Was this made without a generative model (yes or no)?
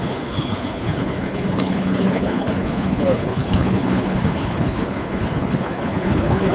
no